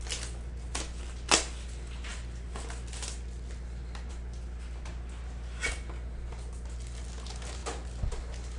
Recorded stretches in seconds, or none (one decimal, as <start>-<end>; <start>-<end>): 0.0-8.6